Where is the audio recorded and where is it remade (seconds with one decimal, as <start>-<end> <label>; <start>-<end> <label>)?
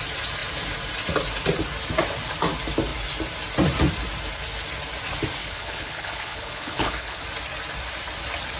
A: 0.0-5.4 recorded; 5.4-7.2 remade; 7.2-8.6 recorded